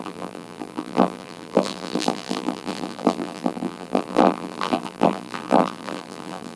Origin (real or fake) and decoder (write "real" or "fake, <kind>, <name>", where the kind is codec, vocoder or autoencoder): fake, vocoder, BigVGAN v2